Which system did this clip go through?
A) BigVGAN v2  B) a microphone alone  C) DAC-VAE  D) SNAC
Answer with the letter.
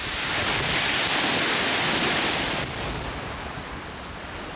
B